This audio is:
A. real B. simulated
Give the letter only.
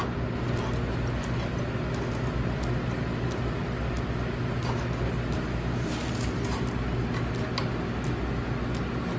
A